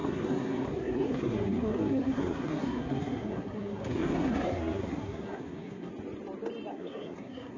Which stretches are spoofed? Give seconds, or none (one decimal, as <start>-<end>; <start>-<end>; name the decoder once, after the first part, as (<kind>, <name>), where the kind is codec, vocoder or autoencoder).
0.0-5.9 (codec, SNAC); 6.7-7.6